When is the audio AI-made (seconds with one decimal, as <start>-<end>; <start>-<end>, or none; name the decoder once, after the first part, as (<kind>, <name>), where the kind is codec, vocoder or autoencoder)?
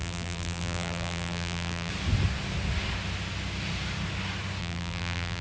0.0-1.9 (vocoder, BigVGAN v2); 4.6-5.4